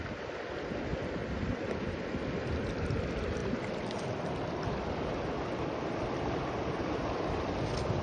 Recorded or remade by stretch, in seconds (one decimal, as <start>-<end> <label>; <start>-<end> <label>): 0.0-8.0 recorded